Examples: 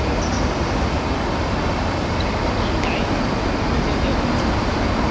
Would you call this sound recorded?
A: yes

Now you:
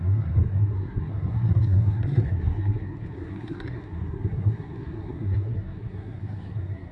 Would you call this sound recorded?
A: no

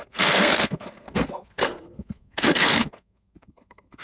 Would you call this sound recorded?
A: no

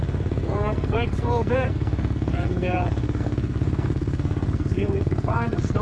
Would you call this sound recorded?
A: no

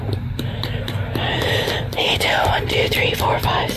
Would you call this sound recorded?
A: yes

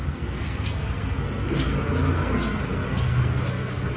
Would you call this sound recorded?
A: no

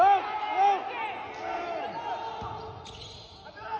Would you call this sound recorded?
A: yes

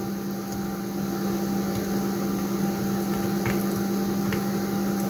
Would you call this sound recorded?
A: yes